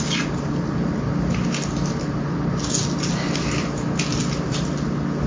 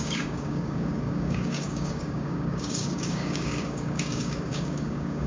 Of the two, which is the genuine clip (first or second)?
first